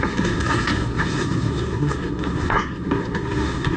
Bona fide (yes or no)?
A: no